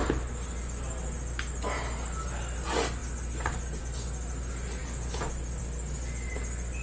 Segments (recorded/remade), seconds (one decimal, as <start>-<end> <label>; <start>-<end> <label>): 0.0-6.8 recorded